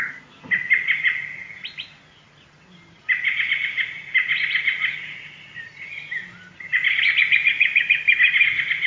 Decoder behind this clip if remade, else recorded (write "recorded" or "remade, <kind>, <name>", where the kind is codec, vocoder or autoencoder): recorded